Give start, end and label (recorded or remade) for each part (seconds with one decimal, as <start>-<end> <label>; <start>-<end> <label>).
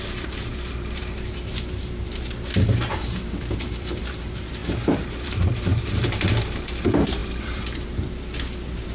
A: 0.0-8.9 remade